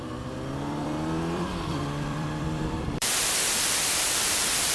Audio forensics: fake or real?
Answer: fake